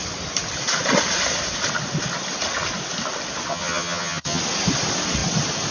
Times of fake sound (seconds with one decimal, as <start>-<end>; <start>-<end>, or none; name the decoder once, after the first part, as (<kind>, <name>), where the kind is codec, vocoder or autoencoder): 3.5-4.4 (vocoder, HiFi-GAN)